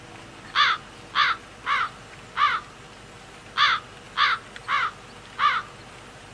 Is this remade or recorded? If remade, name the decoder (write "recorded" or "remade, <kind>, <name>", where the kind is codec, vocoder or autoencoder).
recorded